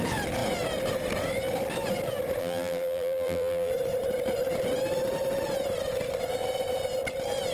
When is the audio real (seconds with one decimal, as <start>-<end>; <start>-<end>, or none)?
0.0-2.4; 3.7-7.5